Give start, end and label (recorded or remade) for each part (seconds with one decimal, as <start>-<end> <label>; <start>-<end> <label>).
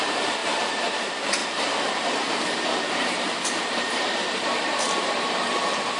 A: 0.0-6.0 remade